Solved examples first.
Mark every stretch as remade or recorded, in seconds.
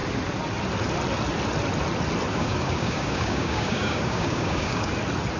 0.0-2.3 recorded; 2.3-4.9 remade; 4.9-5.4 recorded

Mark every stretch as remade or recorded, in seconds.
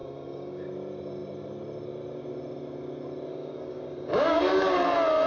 0.0-0.7 remade; 0.7-3.3 recorded; 3.3-4.8 remade; 4.8-5.3 recorded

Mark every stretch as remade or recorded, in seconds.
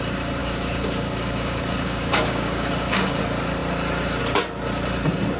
0.0-0.4 recorded; 0.4-3.2 remade; 3.2-5.4 recorded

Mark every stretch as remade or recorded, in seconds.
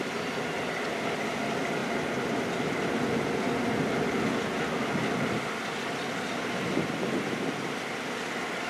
0.0-8.7 recorded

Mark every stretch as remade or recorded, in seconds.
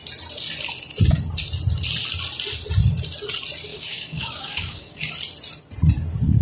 0.0-3.7 recorded; 3.7-5.0 remade; 5.0-6.4 recorded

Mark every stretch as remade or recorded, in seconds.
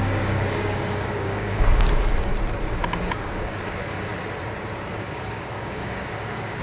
0.0-2.3 remade; 2.3-2.8 recorded; 2.8-4.1 remade; 4.1-4.9 recorded; 4.9-6.6 remade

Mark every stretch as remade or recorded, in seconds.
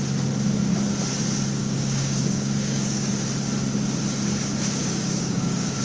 0.0-1.6 recorded; 1.6-3.1 remade; 3.1-4.8 recorded; 4.8-5.8 remade